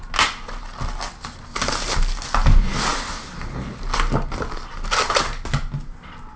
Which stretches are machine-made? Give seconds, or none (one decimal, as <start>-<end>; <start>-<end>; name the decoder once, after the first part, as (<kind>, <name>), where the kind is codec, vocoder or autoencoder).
none